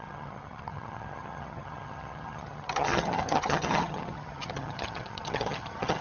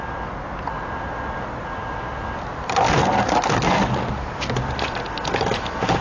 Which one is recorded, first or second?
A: second